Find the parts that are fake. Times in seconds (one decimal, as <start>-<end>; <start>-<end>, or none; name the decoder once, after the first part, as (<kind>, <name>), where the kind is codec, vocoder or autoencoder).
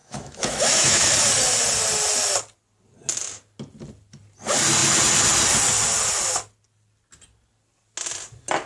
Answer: 0.0-1.1 (autoencoder, DAC-VAE)